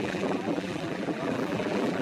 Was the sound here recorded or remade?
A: remade